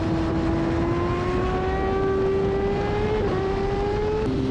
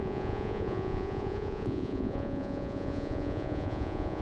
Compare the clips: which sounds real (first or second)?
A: first